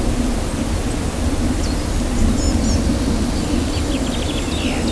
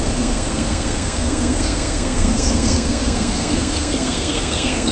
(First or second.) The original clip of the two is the first